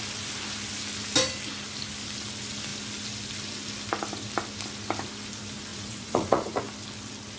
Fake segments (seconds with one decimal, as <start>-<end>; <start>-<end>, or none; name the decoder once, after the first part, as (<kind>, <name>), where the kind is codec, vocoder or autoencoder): 5.7-6.6 (vocoder, Vocos)